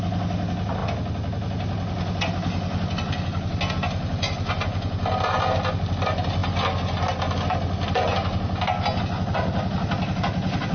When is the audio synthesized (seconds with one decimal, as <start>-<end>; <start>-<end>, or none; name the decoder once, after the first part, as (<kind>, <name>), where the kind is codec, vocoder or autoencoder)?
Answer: none